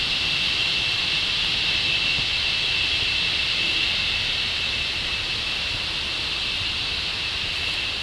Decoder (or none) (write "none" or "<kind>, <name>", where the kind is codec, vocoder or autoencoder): none